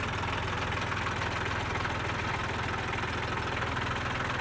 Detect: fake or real real